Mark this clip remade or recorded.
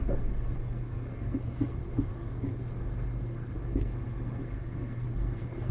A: remade